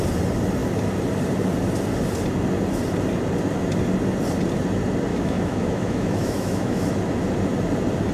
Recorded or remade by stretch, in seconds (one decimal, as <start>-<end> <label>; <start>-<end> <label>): 0.0-5.1 recorded; 5.1-6.9 remade; 6.9-8.1 recorded